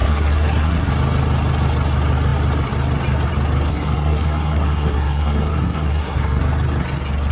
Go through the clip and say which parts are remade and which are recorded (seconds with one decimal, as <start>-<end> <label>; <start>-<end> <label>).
0.0-0.9 remade; 0.9-3.7 recorded; 3.7-6.4 remade; 6.4-7.3 recorded